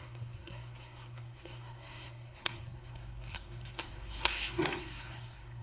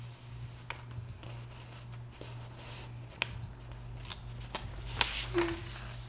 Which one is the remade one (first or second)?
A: first